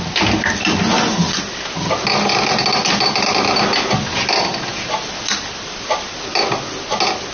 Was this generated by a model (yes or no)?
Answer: no